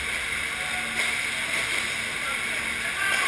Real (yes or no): yes